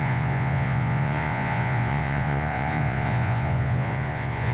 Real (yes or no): no